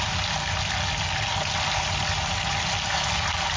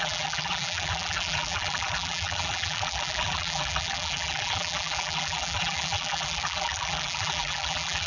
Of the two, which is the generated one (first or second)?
second